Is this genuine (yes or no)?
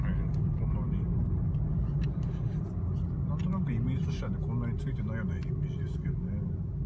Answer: yes